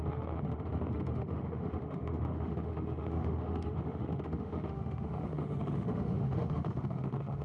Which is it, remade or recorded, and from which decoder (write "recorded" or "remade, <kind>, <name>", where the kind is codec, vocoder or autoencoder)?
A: remade, autoencoder, DAC-VAE